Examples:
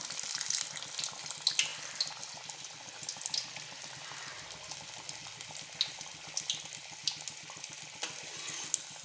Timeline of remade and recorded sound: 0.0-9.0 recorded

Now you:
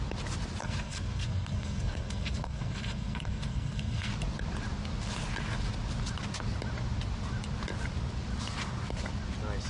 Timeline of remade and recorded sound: 0.0-0.6 recorded; 0.6-4.1 remade; 4.1-9.7 recorded